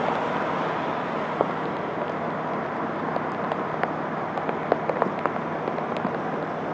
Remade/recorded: recorded